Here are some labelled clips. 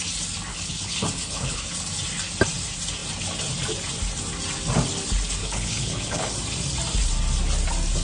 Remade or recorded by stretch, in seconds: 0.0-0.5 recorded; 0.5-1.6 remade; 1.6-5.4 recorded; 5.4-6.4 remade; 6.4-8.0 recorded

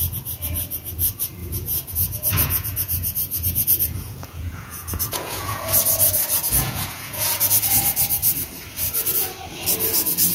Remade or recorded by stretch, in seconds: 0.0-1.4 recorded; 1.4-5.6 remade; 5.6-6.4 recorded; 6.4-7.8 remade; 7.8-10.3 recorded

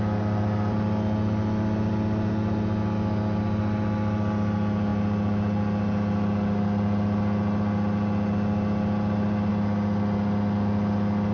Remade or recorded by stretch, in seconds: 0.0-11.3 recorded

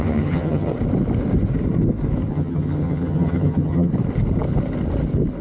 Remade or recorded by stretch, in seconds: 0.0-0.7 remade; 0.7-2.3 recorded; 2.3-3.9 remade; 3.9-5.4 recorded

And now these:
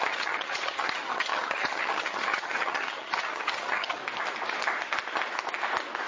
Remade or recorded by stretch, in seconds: 0.0-4.0 remade; 4.0-6.1 recorded

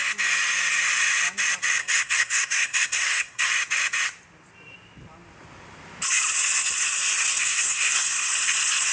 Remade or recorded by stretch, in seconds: 0.0-1.8 recorded; 1.8-3.5 remade; 3.5-7.4 recorded; 7.4-8.3 remade; 8.3-8.9 recorded